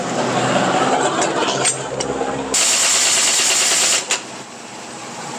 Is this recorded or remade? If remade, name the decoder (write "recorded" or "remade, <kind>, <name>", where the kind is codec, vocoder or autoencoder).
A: recorded